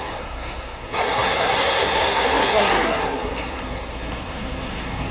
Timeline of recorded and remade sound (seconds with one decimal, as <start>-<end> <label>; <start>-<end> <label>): 0.0-5.1 remade